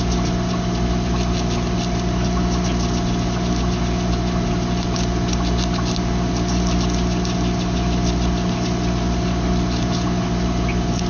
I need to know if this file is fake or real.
real